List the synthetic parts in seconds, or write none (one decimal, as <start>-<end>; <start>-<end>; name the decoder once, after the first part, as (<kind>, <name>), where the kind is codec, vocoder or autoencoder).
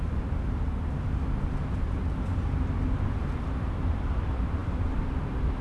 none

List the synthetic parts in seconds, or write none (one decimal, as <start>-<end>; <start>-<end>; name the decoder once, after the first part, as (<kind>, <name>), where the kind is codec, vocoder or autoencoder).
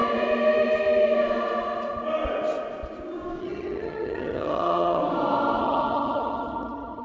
3.4-5.0 (vocoder, HiFi-GAN); 5.6-7.0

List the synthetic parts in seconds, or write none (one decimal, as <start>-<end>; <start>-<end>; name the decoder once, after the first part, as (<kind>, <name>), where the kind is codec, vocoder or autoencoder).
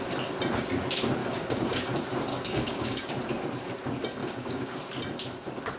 1.2-1.8 (codec, DAC); 2.3-3.1; 4.2-4.8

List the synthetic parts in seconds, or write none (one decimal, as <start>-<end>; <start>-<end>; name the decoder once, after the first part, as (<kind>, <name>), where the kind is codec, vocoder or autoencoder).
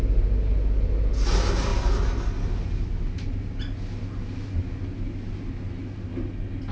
none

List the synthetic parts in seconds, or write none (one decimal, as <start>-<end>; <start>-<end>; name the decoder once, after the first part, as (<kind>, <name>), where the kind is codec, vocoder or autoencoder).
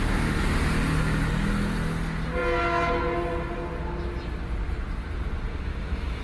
none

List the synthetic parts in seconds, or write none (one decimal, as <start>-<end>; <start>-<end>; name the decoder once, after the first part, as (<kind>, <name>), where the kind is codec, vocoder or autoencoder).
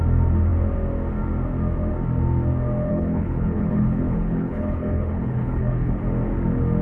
2.9-6.0 (codec, HILCodec)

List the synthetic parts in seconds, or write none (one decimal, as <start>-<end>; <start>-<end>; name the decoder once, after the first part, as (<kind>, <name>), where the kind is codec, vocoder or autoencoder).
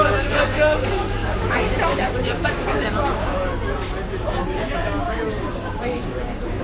0.0-3.5 (codec, DAC); 4.6-6.6